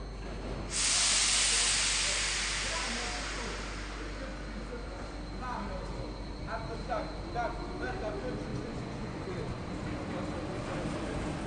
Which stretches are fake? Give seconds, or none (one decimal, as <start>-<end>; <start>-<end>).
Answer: 8.5-9.6